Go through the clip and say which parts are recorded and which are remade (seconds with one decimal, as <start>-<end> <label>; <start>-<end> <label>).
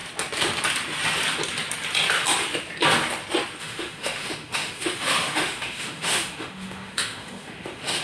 0.0-3.6 recorded; 3.6-8.0 remade